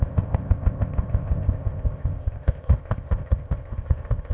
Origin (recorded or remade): remade